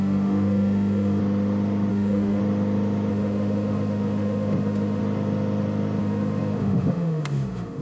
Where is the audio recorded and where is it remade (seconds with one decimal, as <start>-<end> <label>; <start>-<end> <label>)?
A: 0.0-1.2 remade; 1.2-1.9 recorded; 1.9-2.4 remade; 2.4-3.1 recorded; 3.1-5.0 remade; 5.0-6.0 recorded; 6.0-7.8 remade